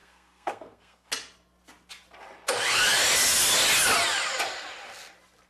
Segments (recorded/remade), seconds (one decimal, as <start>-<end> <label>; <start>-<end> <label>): 0.0-1.1 remade; 1.1-5.5 recorded